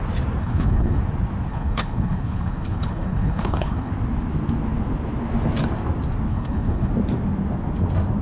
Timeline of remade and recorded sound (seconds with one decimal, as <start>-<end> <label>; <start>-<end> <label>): 0.0-0.4 recorded; 0.4-1.0 remade; 1.0-1.5 recorded; 1.5-3.9 remade; 3.9-6.3 recorded; 6.3-6.9 remade; 6.9-8.2 recorded